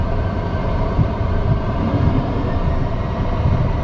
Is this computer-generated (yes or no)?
yes